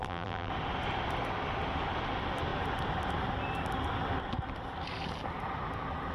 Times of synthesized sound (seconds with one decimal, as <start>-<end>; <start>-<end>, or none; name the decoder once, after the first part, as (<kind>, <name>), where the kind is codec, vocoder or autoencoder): 0.0-0.5 (vocoder, BigVGAN v2)